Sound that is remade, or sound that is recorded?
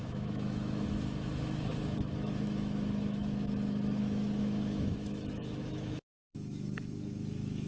remade